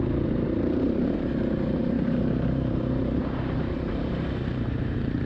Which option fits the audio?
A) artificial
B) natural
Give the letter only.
A